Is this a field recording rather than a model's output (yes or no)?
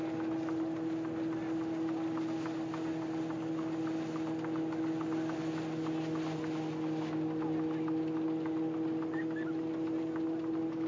yes